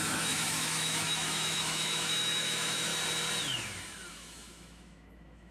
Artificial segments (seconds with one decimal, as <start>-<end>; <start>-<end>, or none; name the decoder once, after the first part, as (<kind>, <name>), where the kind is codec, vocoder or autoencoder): 0.0-2.9 (autoencoder, DAC-VAE); 4.1-5.5